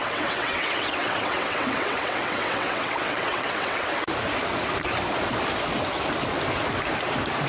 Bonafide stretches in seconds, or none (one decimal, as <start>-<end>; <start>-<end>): 3.9-7.5